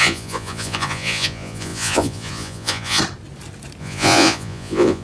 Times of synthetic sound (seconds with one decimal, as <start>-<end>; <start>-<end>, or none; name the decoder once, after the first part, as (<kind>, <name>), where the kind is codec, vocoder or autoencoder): 0.0-3.0 (vocoder, Vocos); 3.8-5.0